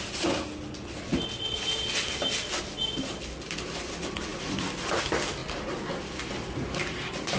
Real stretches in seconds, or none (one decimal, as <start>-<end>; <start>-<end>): 0.0-7.4